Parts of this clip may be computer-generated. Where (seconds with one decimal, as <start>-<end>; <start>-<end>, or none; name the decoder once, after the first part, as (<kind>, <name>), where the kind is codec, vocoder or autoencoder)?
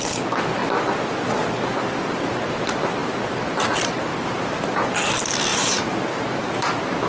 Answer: 4.1-4.9 (vocoder, BigVGAN v2); 5.5-7.1